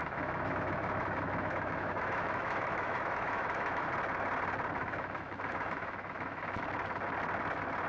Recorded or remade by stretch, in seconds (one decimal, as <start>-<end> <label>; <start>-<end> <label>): 0.0-3.9 remade; 3.9-4.8 recorded; 4.8-6.6 remade; 6.6-7.9 recorded